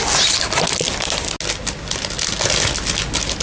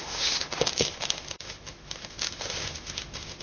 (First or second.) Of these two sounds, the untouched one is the first